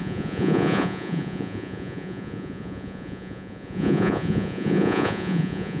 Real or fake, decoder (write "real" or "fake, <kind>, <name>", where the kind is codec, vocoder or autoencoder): fake, vocoder, Vocos